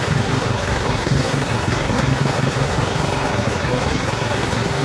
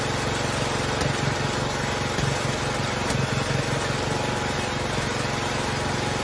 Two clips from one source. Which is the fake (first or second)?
first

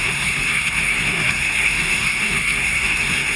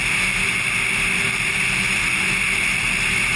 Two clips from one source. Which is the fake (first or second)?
first